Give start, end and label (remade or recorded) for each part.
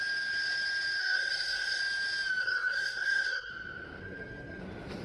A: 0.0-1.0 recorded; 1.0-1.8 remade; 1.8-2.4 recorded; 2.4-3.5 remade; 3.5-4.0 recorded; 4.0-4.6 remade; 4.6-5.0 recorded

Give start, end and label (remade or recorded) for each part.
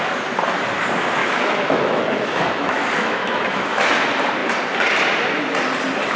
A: 0.0-1.2 recorded; 1.2-3.9 remade; 3.9-6.2 recorded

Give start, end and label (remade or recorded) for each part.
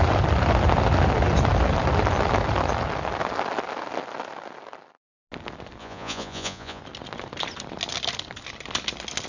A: 0.0-5.8 recorded; 5.8-6.8 remade; 6.8-9.3 recorded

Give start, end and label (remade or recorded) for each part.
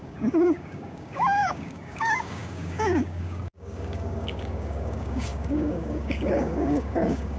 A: 0.0-7.4 remade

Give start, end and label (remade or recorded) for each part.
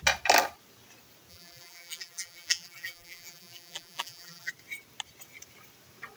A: 0.0-1.3 recorded; 1.3-4.5 remade; 4.5-6.2 recorded